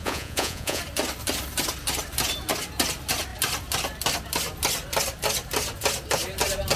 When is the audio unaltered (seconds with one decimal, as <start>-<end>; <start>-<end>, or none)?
0.8-6.8